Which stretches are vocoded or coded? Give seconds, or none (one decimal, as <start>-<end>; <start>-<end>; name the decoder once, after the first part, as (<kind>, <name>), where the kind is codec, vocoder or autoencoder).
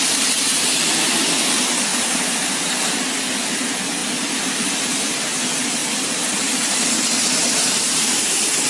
1.9-3.1 (vocoder, BigVGAN v2); 5.8-8.7